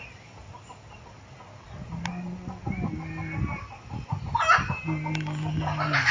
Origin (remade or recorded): recorded